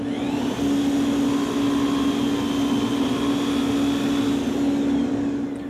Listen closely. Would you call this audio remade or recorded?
recorded